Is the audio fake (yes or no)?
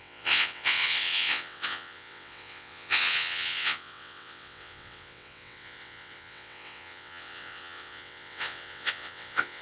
yes